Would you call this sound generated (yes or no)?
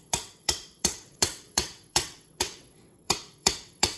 yes